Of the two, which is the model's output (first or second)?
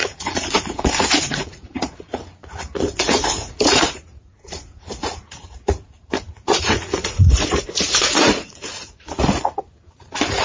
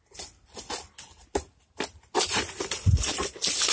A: first